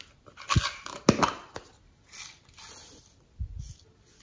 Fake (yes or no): no